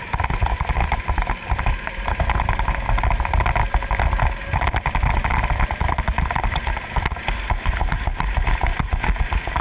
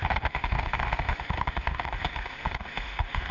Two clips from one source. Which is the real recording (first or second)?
first